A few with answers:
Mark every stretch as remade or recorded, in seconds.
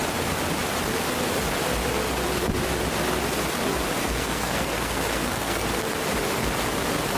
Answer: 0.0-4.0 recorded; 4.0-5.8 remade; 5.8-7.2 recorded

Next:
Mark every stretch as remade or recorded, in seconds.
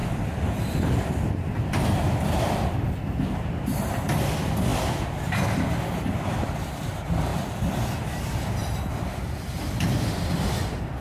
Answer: 0.0-7.3 recorded; 7.3-8.0 remade; 8.0-8.6 recorded; 8.6-10.5 remade; 10.5-11.0 recorded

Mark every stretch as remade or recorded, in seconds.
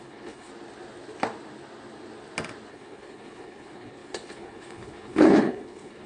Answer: 0.0-0.5 remade; 0.5-2.7 recorded; 2.7-6.1 remade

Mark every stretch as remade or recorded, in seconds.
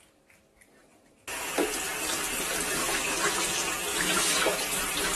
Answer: 0.0-2.8 recorded; 2.8-3.4 remade; 3.4-3.9 recorded; 3.9-4.6 remade; 4.6-5.2 recorded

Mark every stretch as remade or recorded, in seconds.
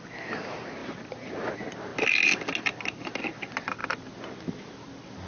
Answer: 0.0-5.3 recorded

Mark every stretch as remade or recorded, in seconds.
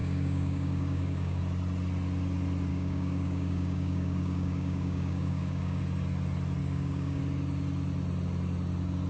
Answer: 0.0-1.4 remade; 1.4-2.7 recorded; 2.7-5.8 remade; 5.8-6.6 recorded; 6.6-7.2 remade; 7.2-9.1 recorded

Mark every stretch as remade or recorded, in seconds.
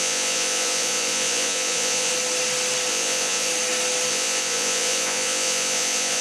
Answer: 0.0-2.1 remade; 2.1-2.9 recorded; 2.9-3.5 remade; 3.5-4.1 recorded; 4.1-6.2 remade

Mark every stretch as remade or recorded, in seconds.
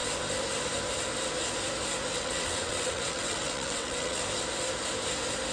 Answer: 0.0-2.1 recorded; 2.1-4.2 remade; 4.2-5.5 recorded